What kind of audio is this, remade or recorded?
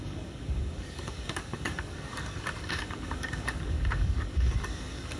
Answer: remade